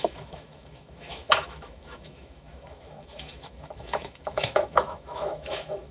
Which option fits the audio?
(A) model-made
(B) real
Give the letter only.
A